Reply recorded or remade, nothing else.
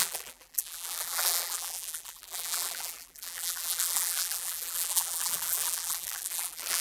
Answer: remade